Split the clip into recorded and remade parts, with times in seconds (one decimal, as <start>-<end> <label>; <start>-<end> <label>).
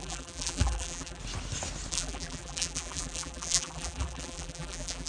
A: 0.0-1.2 remade; 1.2-1.9 recorded; 1.9-5.1 remade